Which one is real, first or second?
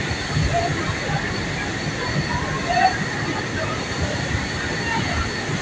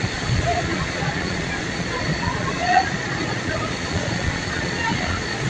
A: first